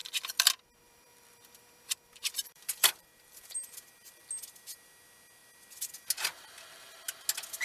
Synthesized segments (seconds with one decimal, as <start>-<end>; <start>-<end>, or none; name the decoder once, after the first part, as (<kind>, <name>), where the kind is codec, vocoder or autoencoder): 0.0-4.3 (vocoder, BigVGAN v2)